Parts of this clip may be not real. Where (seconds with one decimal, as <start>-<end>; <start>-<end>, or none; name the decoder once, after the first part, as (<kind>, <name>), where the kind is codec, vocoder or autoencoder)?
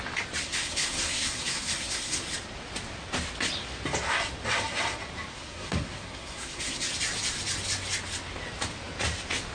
0.4-2.2 (codec, SNAC); 5.3-6.9